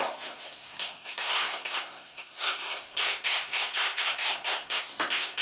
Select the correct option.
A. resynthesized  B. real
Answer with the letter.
A